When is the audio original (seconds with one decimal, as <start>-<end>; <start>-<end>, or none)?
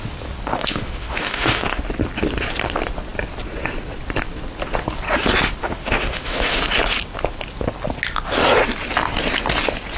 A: 0.0-0.5; 1.8-5.6; 6.6-10.0